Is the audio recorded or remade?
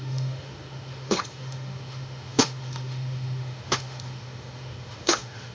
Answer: remade